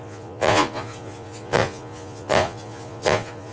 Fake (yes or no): yes